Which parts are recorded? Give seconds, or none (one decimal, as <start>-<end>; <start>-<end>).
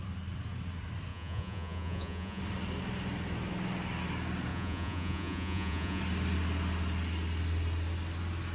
0.0-1.1; 2.4-4.5; 6.0-8.5